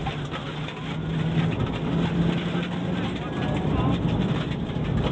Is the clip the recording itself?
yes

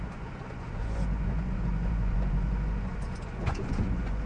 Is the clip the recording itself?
no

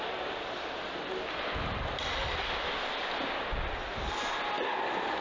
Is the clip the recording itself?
yes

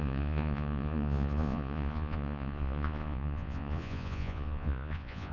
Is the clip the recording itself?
no